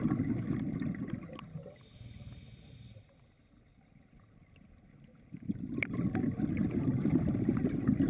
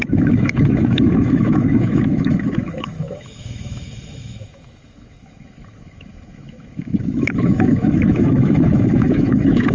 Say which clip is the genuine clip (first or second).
first